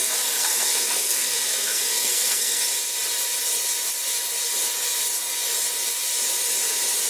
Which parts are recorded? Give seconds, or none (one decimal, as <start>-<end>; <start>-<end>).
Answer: 2.6-7.1